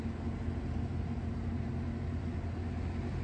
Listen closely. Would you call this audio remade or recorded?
recorded